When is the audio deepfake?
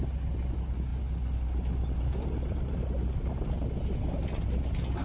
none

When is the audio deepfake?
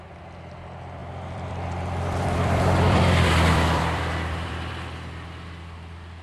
1.0-4.7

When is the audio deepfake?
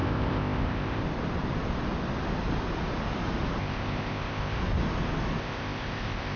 0.0-1.0; 3.6-4.6; 5.4-6.4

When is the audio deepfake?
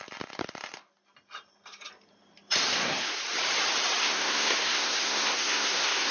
2.7-3.2; 4.0-6.1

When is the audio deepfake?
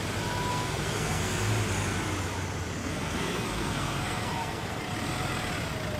0.5-1.5; 2.8-4.8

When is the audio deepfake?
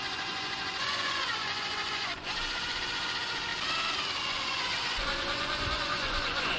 0.0-3.5; 4.2-6.6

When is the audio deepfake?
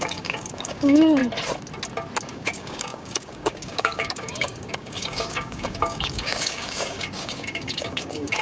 0.0-1.2; 2.2-8.4